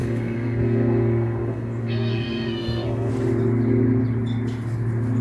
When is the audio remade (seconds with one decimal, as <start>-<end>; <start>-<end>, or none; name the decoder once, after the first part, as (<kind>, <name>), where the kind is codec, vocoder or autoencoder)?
0.0-3.1 (codec, SNAC)